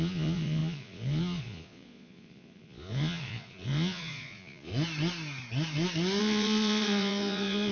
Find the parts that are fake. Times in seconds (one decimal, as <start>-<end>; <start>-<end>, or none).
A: 0.0-4.7; 6.2-7.7